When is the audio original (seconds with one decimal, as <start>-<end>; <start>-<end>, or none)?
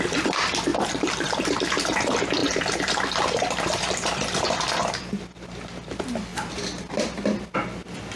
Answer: 0.0-0.7; 1.6-2.4; 5.2-6.3; 7.2-8.2